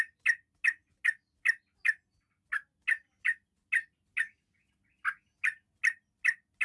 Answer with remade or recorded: recorded